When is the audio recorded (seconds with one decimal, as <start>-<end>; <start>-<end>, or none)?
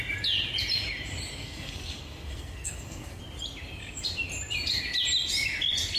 0.0-1.4; 3.2-6.0